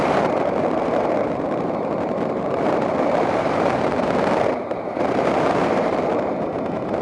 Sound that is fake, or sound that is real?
fake